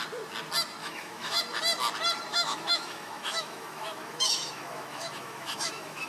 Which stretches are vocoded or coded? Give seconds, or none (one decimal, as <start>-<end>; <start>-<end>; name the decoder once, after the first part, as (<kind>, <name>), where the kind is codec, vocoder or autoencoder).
0.8-1.4 (autoencoder, DAC-VAE); 2.3-6.1